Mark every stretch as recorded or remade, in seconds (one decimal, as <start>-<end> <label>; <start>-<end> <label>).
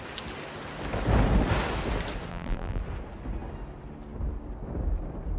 0.0-2.3 recorded; 2.3-2.8 remade; 2.8-5.4 recorded